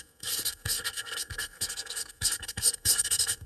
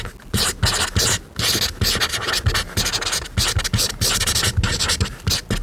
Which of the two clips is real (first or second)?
second